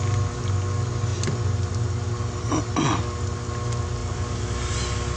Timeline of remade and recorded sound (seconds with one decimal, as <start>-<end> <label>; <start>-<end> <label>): 0.0-5.2 recorded